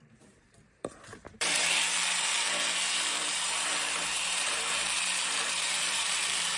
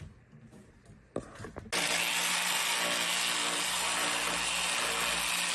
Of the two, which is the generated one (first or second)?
first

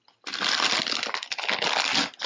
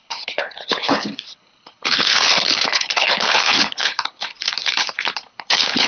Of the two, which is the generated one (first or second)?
second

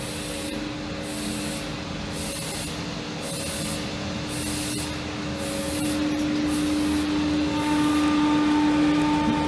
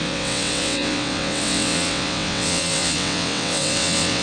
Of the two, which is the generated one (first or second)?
second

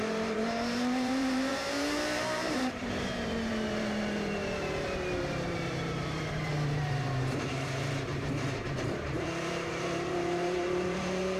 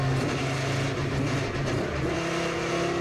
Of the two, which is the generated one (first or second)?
first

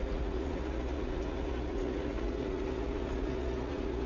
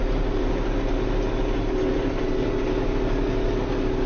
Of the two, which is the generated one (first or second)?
first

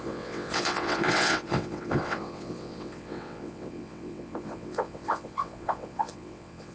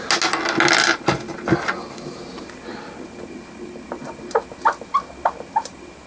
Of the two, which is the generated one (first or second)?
first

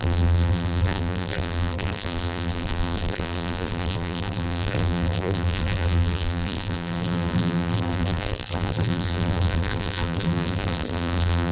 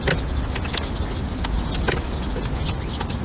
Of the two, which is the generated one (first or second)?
first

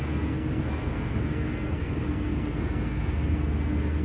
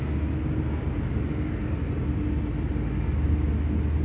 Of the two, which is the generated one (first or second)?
first